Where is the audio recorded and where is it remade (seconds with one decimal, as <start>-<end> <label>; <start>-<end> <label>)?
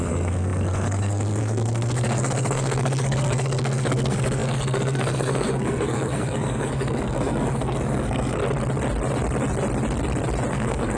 0.0-8.4 remade; 8.4-10.5 recorded; 10.5-11.0 remade